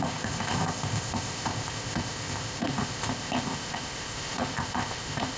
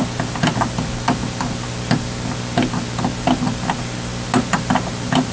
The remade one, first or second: first